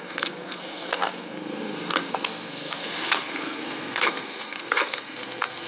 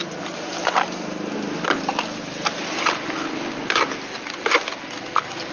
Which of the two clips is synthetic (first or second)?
first